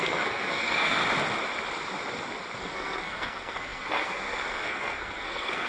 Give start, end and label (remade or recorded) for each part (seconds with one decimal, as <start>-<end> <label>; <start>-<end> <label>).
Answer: 0.0-1.0 remade; 1.0-2.6 recorded; 2.6-5.7 remade